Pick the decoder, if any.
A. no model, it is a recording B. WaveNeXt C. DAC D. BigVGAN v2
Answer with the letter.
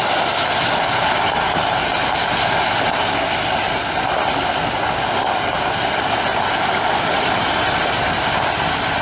A